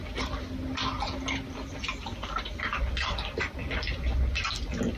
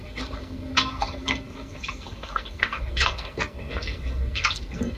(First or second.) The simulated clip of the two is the second